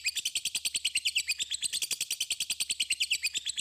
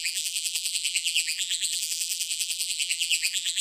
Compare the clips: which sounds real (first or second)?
first